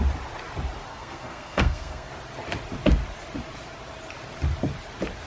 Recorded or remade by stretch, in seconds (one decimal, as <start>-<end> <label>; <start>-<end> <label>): 0.0-0.9 recorded; 0.9-2.1 remade; 2.1-5.3 recorded